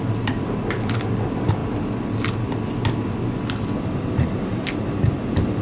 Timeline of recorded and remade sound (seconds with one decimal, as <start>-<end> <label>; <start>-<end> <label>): 0.0-5.6 recorded